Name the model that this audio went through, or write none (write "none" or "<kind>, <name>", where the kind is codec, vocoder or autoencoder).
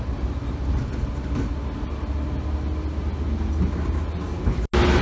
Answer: none